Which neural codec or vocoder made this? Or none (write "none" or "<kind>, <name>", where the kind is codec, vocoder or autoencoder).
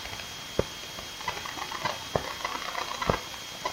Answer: none